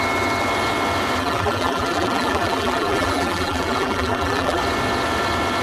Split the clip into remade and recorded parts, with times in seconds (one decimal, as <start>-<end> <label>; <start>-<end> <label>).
0.0-1.2 recorded; 1.2-4.6 remade; 4.6-5.6 recorded